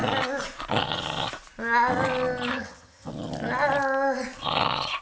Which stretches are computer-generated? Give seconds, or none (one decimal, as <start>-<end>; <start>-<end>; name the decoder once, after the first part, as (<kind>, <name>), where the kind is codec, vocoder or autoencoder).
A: 2.5-3.1 (vocoder, HiFi-GAN)